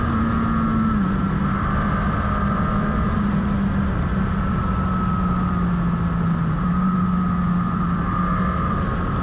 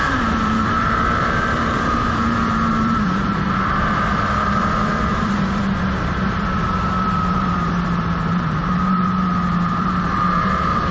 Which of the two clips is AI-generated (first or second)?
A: second